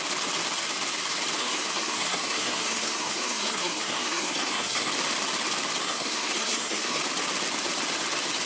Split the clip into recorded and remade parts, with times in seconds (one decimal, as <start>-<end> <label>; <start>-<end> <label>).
0.0-1.4 recorded; 1.4-4.9 remade; 4.9-5.8 recorded; 5.8-7.0 remade; 7.0-8.5 recorded